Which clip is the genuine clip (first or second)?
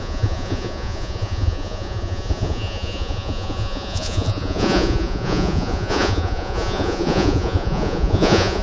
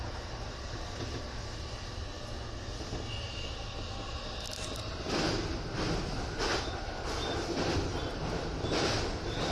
second